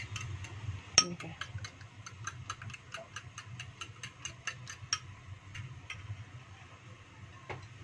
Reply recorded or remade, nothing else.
recorded